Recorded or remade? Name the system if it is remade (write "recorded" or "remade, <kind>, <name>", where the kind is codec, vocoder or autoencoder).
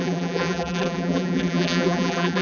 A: remade, vocoder, BigVGAN v2